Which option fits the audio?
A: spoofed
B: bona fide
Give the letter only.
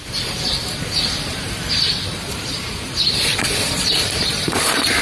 A